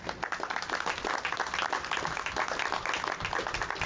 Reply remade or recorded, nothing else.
recorded